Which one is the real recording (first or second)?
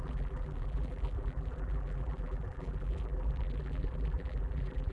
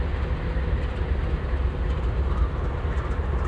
second